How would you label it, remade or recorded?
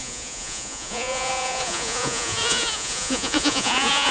remade